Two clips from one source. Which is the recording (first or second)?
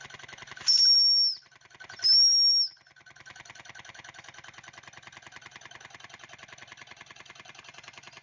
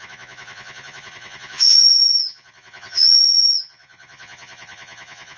first